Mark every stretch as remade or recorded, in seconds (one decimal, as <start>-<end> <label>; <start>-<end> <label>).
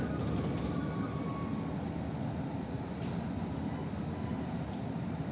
0.0-5.3 remade